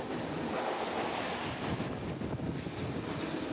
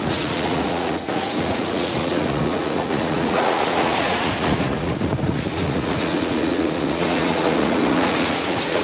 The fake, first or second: second